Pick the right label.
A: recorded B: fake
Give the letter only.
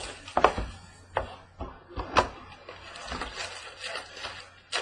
A